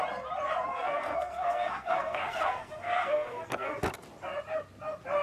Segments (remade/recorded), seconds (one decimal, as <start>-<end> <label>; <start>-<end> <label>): 0.0-0.7 recorded; 0.7-3.8 remade; 3.8-5.2 recorded